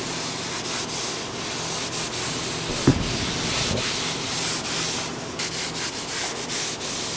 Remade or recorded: recorded